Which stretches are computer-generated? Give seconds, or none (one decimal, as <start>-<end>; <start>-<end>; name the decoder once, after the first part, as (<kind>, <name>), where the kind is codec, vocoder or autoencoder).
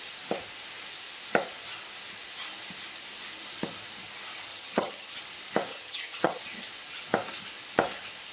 4.5-5.2 (vocoder, HiFi-GAN); 5.7-6.4